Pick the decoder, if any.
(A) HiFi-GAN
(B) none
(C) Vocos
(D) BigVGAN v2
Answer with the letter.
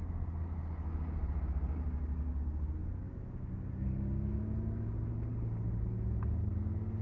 B